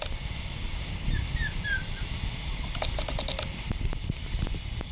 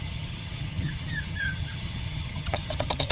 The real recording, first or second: first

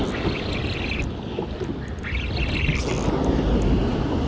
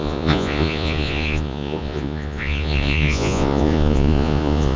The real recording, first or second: first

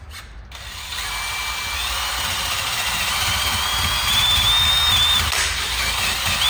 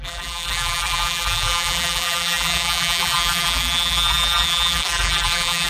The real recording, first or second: first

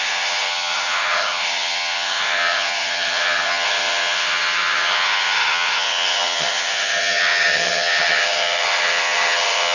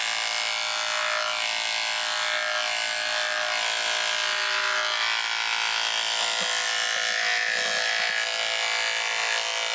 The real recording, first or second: second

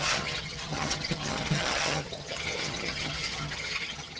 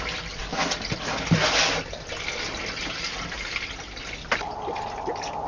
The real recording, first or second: second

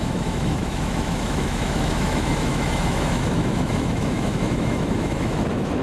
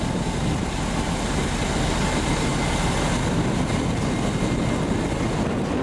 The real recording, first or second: second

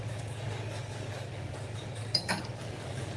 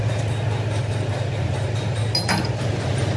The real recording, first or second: second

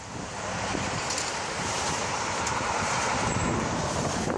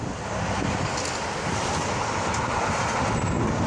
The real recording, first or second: second